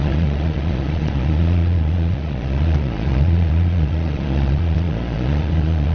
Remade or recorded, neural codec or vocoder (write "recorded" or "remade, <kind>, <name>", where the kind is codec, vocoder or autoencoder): remade, vocoder, Vocos